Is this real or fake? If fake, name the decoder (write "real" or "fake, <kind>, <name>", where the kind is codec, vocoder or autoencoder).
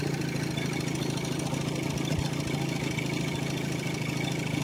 real